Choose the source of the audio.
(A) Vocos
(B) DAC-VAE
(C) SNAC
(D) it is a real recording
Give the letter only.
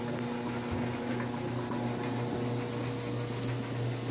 D